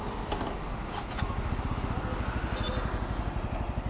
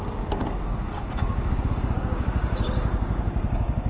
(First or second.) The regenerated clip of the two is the second